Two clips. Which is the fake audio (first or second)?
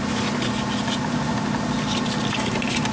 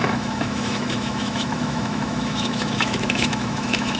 second